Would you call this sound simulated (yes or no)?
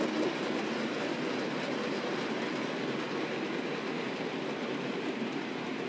no